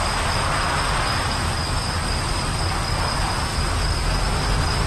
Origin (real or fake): real